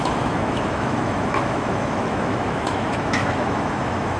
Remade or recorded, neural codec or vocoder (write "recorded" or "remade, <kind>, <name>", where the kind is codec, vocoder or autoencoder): remade, autoencoder, DAC-VAE